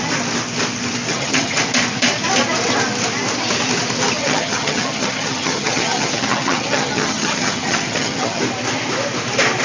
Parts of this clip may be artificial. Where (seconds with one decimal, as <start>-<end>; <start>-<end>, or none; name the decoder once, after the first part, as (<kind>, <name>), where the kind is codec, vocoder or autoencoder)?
1.1-1.6 (vocoder, HiFi-GAN); 4.2-8.4